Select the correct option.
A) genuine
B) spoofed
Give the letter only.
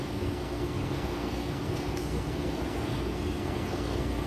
B